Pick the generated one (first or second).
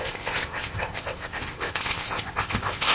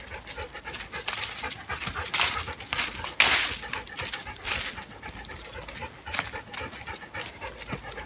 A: first